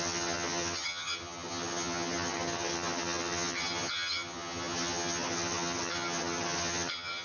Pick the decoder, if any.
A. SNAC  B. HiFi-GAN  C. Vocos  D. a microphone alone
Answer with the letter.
B